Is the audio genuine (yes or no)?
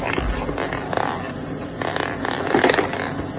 yes